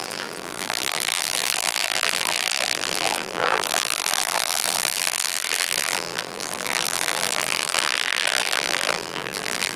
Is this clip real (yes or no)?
no